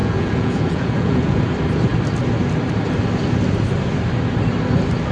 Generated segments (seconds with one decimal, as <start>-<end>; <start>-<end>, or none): 0.0-1.4